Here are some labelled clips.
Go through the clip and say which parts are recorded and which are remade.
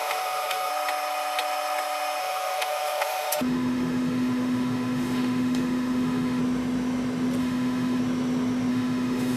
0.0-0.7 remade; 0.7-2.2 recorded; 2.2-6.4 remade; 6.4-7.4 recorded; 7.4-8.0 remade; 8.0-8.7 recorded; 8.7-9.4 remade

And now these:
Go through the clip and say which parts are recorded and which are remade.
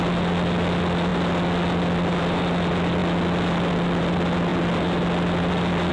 0.0-5.9 recorded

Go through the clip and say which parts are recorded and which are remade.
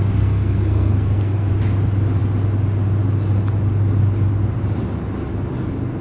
0.0-1.5 remade; 1.5-6.0 recorded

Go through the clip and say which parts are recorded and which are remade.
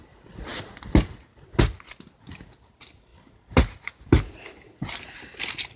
0.0-5.8 recorded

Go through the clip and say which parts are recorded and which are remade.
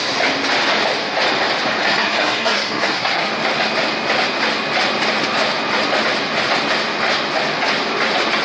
0.0-1.8 recorded; 1.8-3.3 remade; 3.3-8.4 recorded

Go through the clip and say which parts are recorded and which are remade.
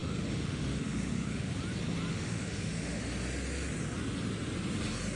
0.0-1.5 remade; 1.5-2.1 recorded; 2.1-3.0 remade; 3.0-5.2 recorded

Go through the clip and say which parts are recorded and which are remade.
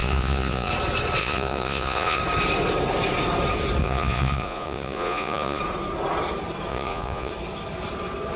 0.0-0.7 remade; 0.7-1.2 recorded; 1.2-2.2 remade; 2.2-3.8 recorded; 3.8-5.6 remade; 5.6-6.7 recorded; 6.7-7.3 remade; 7.3-8.4 recorded